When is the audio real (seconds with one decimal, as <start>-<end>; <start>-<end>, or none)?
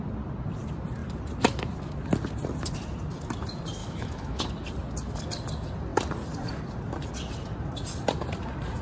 0.0-3.8; 4.5-8.8